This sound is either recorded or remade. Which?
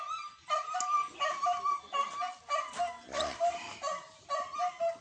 recorded